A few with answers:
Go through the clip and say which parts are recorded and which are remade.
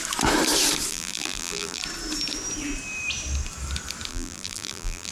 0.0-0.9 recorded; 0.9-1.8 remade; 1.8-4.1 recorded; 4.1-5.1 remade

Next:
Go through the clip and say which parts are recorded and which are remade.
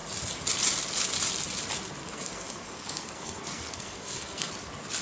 0.0-2.0 recorded; 2.0-4.5 remade; 4.5-5.0 recorded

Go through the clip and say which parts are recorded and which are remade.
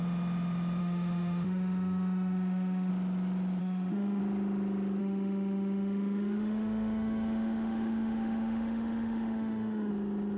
0.0-0.8 recorded; 0.8-2.9 remade; 2.9-3.6 recorded; 3.6-4.2 remade; 4.2-5.0 recorded; 5.0-9.9 remade; 9.9-10.4 recorded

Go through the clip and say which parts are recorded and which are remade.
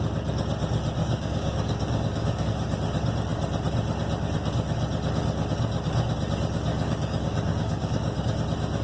0.0-1.0 recorded; 1.0-2.5 remade; 2.5-6.7 recorded; 6.7-8.3 remade; 8.3-8.8 recorded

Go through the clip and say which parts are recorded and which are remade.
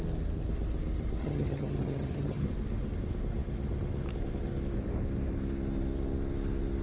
0.0-1.2 recorded; 1.2-2.5 remade; 2.5-6.8 recorded